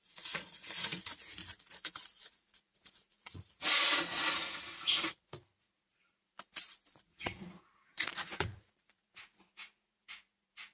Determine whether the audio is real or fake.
fake